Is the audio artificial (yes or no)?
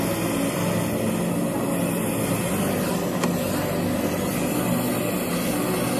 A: no